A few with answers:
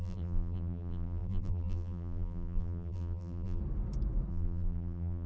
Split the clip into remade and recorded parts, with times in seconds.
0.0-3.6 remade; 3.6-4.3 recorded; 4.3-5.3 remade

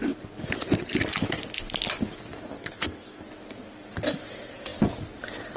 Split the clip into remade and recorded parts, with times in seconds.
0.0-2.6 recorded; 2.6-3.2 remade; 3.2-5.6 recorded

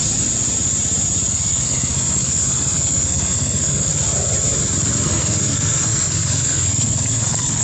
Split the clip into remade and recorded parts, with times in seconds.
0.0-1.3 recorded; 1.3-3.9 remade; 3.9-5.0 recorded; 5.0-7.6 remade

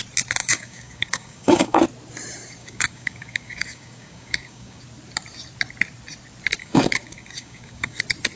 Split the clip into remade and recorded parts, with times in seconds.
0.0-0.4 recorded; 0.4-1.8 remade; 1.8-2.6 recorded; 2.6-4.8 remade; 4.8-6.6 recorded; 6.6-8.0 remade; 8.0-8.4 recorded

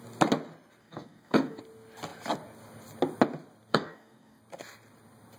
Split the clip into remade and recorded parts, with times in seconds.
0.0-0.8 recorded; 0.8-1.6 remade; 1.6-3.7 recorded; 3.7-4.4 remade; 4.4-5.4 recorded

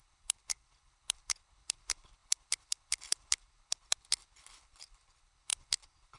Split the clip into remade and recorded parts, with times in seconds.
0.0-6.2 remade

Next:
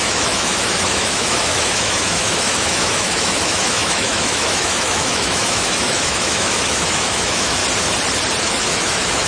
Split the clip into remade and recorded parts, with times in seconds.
0.0-7.6 remade; 7.6-8.4 recorded; 8.4-9.3 remade